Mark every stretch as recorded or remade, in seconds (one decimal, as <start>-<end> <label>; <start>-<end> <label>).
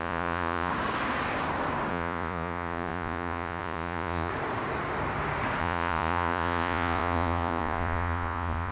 0.0-0.7 remade; 0.7-1.9 recorded; 1.9-4.3 remade; 4.3-5.6 recorded; 5.6-8.7 remade